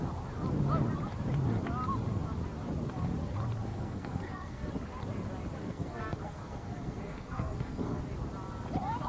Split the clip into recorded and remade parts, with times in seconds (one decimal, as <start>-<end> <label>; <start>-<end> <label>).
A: 0.0-3.7 recorded; 3.7-4.7 remade; 4.7-5.6 recorded; 5.6-8.0 remade; 8.0-9.1 recorded